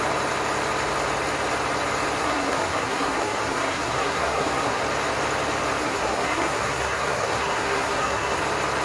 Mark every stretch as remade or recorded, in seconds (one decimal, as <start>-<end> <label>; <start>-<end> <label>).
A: 0.0-2.2 recorded; 2.2-4.8 remade; 4.8-5.8 recorded; 5.8-8.4 remade; 8.4-8.8 recorded